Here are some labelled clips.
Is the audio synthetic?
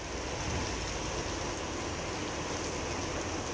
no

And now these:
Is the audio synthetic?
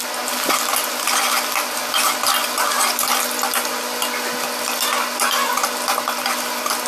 no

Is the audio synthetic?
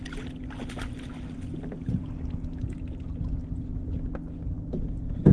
no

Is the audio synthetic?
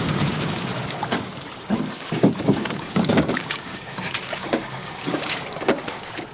yes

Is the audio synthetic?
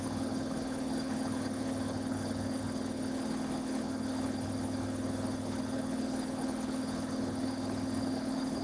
yes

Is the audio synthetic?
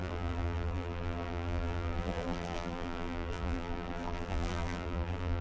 yes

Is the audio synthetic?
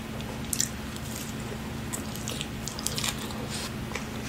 no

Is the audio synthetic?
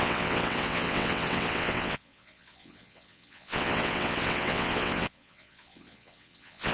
yes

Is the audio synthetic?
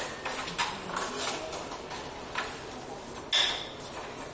no